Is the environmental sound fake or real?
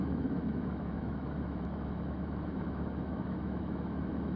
fake